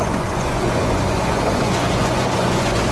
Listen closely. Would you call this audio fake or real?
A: fake